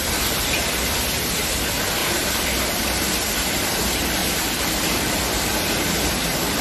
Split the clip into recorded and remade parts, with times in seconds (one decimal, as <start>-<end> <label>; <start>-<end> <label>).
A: 0.0-2.0 recorded; 2.0-2.6 remade; 2.6-4.2 recorded; 4.2-5.1 remade; 5.1-6.6 recorded